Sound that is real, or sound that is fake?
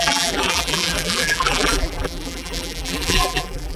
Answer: fake